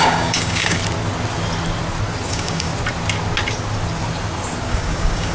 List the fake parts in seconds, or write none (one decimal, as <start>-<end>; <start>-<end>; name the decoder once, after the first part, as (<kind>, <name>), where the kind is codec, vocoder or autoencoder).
0.0-0.8 (codec, DAC); 2.3-2.7; 4.7-5.3